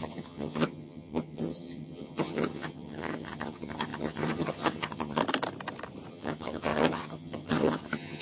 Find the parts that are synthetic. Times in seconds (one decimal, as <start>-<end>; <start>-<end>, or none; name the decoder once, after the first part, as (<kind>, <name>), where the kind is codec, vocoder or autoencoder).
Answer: 0.0-5.2 (vocoder, HiFi-GAN); 6.1-8.2